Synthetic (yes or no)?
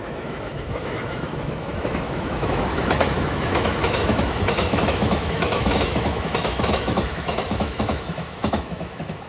yes